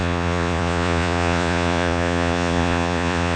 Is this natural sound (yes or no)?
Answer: no